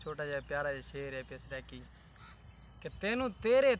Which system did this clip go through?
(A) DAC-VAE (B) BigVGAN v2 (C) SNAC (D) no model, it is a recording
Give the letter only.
D